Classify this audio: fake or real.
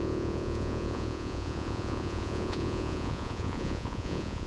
fake